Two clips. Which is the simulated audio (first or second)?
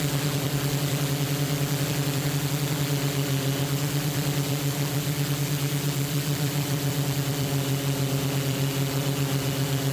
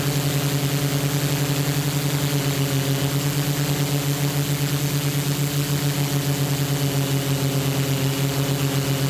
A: first